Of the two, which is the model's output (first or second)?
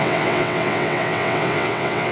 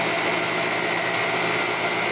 first